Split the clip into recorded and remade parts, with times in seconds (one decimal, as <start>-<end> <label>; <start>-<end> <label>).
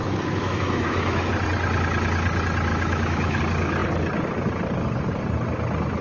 0.0-1.3 remade; 1.3-2.7 recorded; 2.7-3.4 remade; 3.4-6.0 recorded